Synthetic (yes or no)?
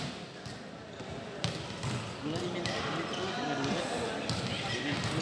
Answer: no